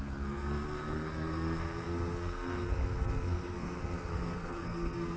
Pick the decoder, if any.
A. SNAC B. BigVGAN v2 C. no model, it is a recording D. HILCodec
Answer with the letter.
A